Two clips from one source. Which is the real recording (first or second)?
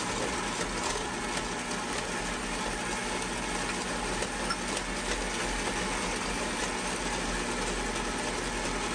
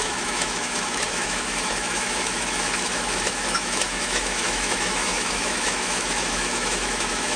first